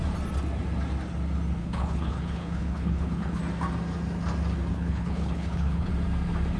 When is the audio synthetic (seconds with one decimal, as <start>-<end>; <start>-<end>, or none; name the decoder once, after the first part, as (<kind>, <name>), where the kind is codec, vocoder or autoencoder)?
1.6-3.4 (codec, HILCodec); 4.7-5.9